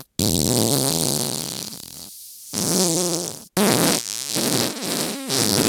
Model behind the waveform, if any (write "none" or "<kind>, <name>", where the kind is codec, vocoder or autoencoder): none